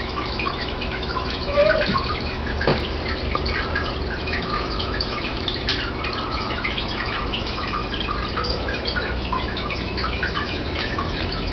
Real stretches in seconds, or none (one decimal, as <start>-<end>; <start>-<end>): 1.6-2.1; 2.7-4.2; 5.7-6.3; 7.8-8.5